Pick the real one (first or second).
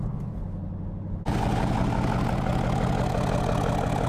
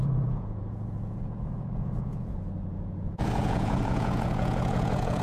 first